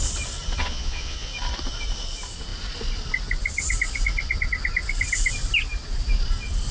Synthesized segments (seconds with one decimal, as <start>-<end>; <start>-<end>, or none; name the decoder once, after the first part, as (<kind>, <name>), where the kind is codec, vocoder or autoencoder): 0.6-1.3 (vocoder, Vocos)